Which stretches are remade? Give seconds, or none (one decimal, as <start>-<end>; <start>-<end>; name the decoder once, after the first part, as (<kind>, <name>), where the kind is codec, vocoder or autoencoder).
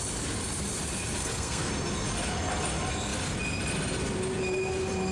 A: 1.2-1.7 (codec, SNAC)